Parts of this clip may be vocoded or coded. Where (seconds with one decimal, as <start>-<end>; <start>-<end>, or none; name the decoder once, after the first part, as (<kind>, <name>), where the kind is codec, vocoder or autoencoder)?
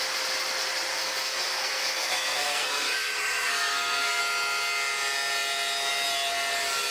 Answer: 0.9-4.2 (codec, SNAC)